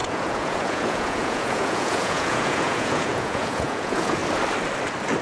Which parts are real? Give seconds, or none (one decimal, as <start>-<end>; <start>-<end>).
4.2-5.2